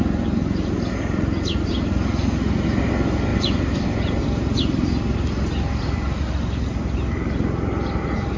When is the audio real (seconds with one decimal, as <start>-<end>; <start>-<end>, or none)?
0.0-3.3; 4.2-8.4